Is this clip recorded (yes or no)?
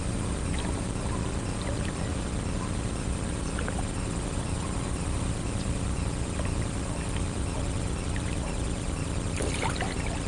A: no